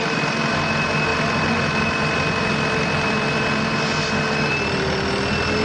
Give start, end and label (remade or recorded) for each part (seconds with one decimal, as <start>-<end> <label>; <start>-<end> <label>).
0.0-1.1 recorded; 1.1-4.5 remade; 4.5-5.6 recorded